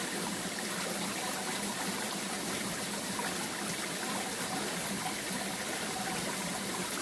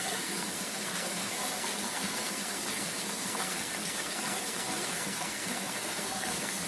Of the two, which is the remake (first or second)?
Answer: second